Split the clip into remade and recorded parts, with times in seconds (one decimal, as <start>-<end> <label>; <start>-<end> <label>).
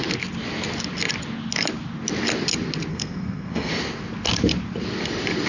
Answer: 0.0-2.9 recorded; 2.9-3.7 remade; 3.7-5.5 recorded